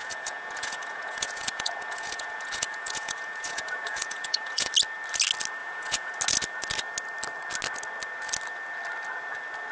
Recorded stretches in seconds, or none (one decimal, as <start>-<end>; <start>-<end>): 4.7-5.6; 6.2-9.7